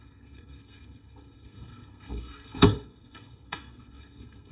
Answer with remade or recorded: remade